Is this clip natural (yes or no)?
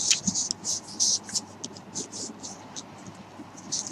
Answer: yes